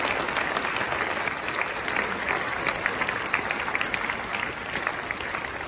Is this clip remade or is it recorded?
recorded